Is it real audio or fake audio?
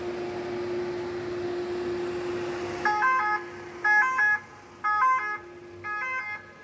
real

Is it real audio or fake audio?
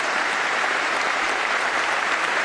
fake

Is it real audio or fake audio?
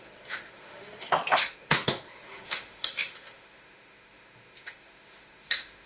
fake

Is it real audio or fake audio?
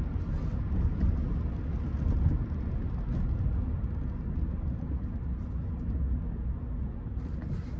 real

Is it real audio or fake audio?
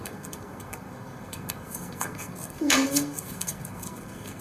fake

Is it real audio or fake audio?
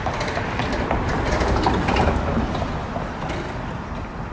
fake